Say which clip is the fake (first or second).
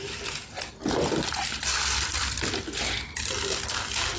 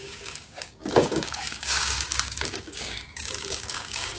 second